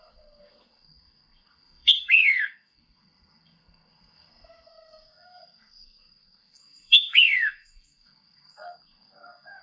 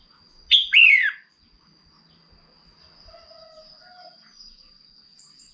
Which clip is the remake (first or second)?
first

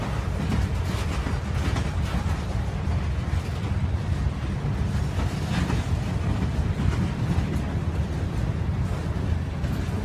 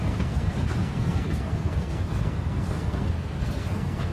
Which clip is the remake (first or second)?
second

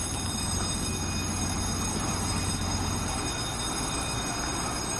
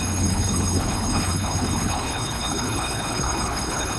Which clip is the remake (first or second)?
second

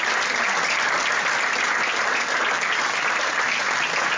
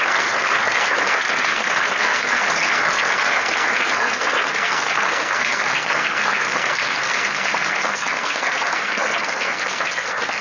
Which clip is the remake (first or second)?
second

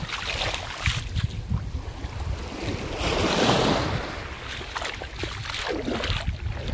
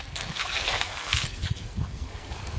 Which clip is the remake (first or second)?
second